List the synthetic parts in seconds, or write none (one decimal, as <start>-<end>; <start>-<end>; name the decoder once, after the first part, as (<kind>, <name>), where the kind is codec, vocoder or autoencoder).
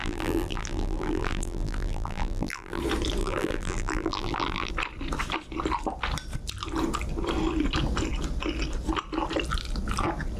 0.0-2.8 (vocoder, BigVGAN v2); 3.2-4.7